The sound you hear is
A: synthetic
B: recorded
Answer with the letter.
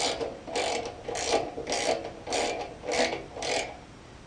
B